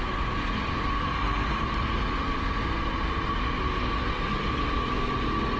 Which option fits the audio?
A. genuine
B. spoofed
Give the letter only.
A